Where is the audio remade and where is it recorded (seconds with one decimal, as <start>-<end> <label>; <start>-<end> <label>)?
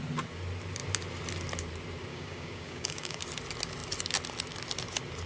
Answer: 0.0-2.1 recorded; 2.1-3.2 remade; 3.2-5.3 recorded